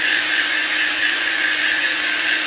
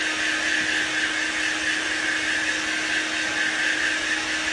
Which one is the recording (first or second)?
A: second